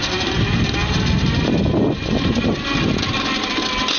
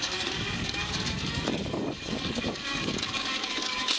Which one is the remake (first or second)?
second